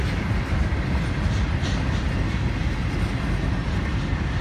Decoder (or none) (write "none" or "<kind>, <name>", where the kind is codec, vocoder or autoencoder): none